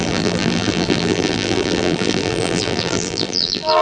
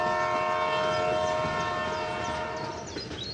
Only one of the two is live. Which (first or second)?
second